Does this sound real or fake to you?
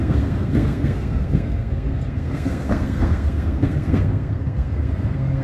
fake